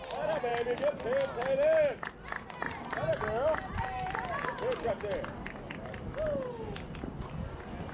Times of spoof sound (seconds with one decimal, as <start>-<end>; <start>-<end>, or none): none

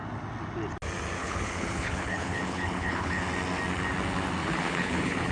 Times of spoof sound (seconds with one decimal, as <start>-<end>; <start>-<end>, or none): 1.2-3.2; 4.4-5.3

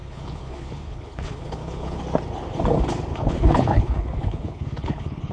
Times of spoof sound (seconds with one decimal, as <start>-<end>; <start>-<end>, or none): 0.0-2.0; 3.1-5.3

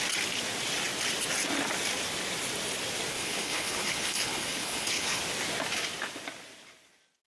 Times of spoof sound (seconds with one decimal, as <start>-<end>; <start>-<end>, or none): 3.1-5.2